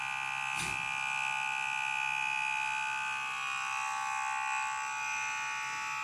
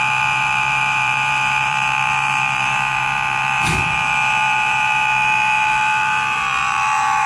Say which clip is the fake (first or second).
second